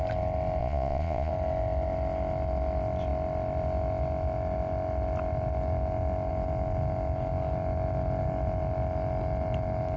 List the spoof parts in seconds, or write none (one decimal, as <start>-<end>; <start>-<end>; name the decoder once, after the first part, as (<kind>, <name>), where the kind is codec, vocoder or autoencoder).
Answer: 0.6-1.3 (vocoder, Vocos)